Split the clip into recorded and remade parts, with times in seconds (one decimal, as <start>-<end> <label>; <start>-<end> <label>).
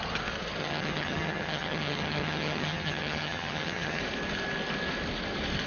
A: 0.0-0.6 recorded; 0.6-4.0 remade; 4.0-5.7 recorded